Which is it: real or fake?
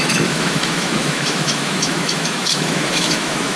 fake